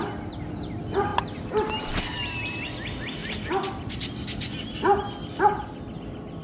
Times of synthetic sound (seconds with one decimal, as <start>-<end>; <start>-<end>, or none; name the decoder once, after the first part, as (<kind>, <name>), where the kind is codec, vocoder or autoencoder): none